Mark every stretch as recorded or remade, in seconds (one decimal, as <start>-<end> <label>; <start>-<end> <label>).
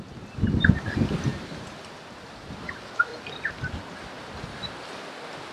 0.0-3.1 remade; 3.1-4.8 recorded; 4.8-5.5 remade